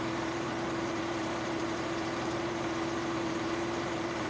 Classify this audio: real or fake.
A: fake